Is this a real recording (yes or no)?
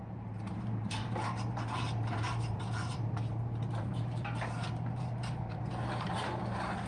no